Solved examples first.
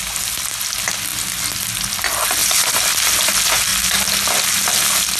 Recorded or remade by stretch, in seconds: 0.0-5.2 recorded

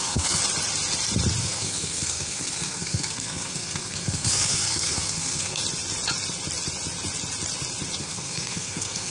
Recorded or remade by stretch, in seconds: 0.0-0.4 remade; 0.4-1.4 recorded; 1.4-5.6 remade; 5.6-8.0 recorded; 8.0-9.1 remade

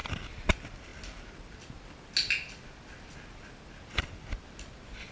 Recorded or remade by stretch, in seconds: 0.0-5.1 recorded

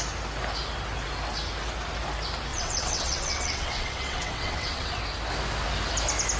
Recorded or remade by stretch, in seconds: 0.0-2.5 recorded; 2.5-5.0 remade; 5.0-6.4 recorded

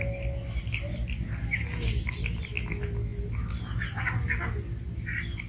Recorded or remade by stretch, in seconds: 0.0-5.5 recorded

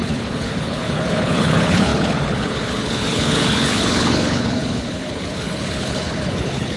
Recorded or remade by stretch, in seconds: 0.0-6.8 remade

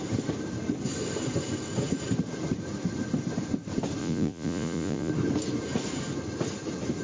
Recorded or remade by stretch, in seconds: 0.0-4.0 recorded; 4.0-5.1 remade; 5.1-7.0 recorded